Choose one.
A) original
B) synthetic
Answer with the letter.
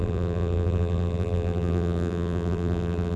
B